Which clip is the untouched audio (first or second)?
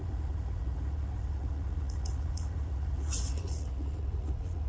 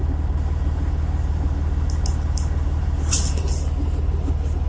second